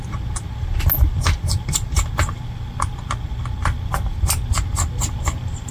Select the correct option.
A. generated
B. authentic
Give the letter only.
B